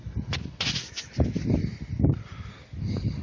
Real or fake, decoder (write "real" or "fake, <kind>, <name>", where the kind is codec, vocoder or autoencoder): real